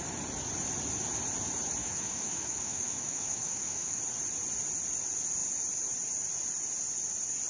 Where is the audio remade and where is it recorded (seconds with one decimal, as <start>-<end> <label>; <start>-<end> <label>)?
0.0-1.8 recorded; 1.8-4.0 remade; 4.0-7.5 recorded